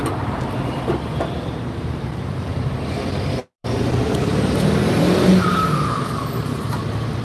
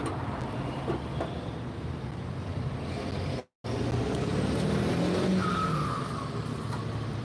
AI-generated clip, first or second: first